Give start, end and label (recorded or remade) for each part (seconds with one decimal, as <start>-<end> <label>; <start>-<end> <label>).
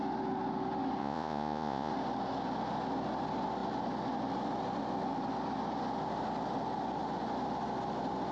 0.0-1.0 recorded; 1.0-1.9 remade; 1.9-8.3 recorded